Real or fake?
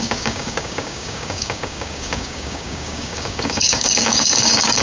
fake